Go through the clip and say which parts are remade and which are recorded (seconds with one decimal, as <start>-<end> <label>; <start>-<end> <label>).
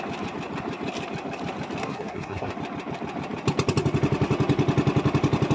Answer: 0.0-1.8 recorded; 1.8-2.5 remade; 2.5-5.5 recorded